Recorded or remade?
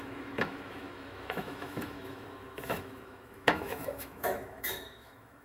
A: remade